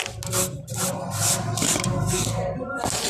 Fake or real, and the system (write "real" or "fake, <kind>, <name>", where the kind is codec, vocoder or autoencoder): real